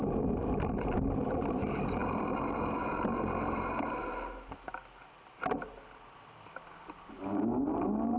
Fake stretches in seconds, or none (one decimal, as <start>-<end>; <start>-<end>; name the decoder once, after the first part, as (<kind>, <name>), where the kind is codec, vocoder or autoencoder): none